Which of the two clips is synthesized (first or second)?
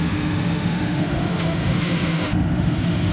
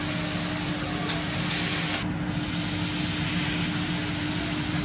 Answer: first